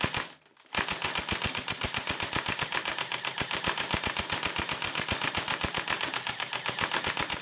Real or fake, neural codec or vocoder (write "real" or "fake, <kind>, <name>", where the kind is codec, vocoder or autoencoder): fake, vocoder, BigVGAN v2